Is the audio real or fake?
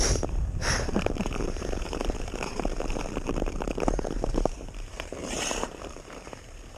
fake